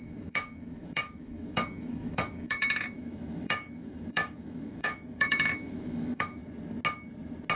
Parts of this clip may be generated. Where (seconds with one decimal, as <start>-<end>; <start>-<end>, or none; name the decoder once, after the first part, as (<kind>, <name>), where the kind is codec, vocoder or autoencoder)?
0.0-6.4 (autoencoder, DAC-VAE)